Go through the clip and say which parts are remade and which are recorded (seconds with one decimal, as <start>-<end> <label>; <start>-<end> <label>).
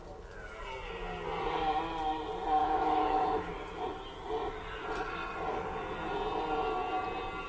0.0-2.6 recorded; 2.6-3.5 remade; 3.5-7.5 recorded